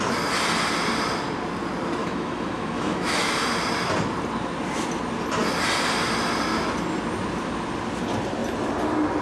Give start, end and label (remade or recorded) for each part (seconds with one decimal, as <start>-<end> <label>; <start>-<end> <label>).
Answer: 0.0-2.0 recorded; 2.0-3.3 remade; 3.3-9.2 recorded